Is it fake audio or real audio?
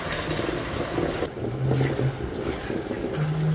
real